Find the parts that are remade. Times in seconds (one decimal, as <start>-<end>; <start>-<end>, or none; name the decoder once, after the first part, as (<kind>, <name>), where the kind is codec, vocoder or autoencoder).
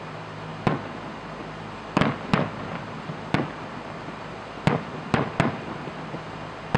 none